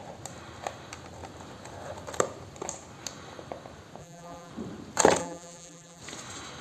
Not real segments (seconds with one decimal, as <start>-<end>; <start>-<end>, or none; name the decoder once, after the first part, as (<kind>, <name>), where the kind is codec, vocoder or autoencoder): 4.0-4.5 (vocoder, BigVGAN v2); 5.2-6.0